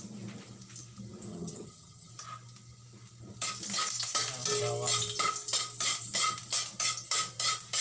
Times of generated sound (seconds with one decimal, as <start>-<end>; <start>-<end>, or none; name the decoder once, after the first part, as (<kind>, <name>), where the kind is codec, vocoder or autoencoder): 1.3-2.1 (vocoder, HiFi-GAN)